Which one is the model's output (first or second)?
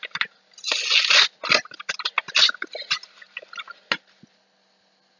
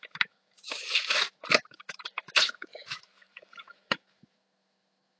second